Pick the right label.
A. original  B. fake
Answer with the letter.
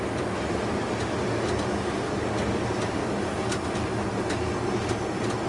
A